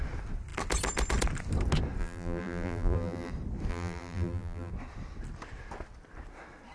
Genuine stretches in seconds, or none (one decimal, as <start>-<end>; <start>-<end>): 0.0-2.0; 3.3-3.7; 4.7-6.7